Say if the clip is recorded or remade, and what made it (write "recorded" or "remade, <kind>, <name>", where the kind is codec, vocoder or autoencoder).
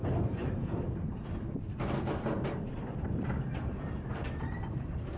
remade, vocoder, BigVGAN v2